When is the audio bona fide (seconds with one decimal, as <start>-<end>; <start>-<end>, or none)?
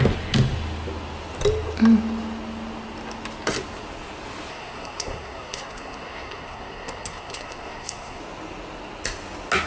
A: 0.0-4.5; 8.2-9.7